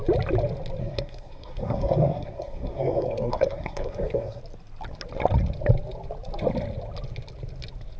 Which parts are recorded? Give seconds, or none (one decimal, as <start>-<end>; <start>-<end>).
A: 0.0-0.8; 4.4-8.0